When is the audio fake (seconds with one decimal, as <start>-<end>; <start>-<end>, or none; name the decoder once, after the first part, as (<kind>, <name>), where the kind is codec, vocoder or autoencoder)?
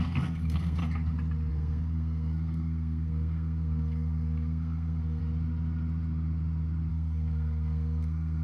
0.0-0.8 (codec, SNAC); 1.5-5.2; 6.9-8.4